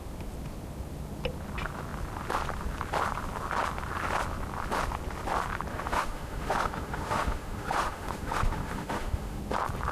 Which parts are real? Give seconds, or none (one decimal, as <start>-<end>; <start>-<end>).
0.0-5.7; 9.4-9.9